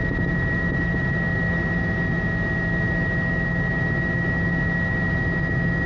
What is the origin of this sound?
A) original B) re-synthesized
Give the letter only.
A